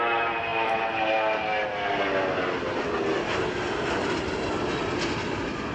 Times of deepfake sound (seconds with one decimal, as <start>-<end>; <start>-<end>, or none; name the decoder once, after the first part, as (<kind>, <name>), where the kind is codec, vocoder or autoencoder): none